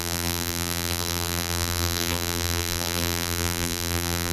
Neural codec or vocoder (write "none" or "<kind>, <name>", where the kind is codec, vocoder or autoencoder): vocoder, BigVGAN v2